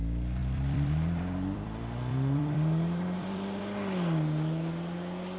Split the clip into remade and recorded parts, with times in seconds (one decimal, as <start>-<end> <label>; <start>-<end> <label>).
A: 0.0-0.4 recorded; 0.4-3.6 remade; 3.6-5.4 recorded